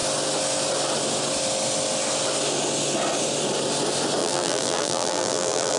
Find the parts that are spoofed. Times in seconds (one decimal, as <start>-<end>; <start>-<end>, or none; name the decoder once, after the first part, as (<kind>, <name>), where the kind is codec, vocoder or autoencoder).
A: 4.2-5.8 (vocoder, BigVGAN v2)